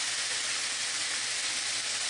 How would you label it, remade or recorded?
recorded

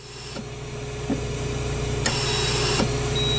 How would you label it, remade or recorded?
recorded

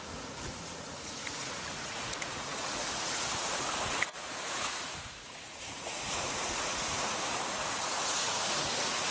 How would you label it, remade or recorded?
remade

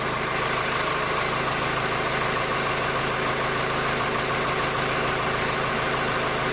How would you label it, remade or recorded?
recorded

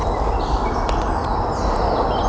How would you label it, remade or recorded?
recorded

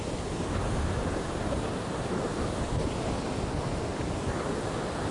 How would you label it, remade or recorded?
recorded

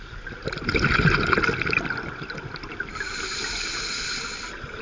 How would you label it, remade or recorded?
recorded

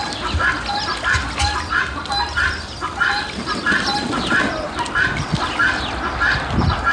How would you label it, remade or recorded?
recorded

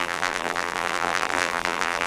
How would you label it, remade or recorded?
remade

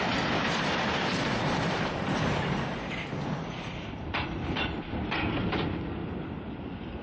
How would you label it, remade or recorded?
remade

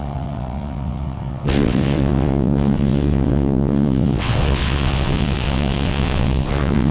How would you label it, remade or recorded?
remade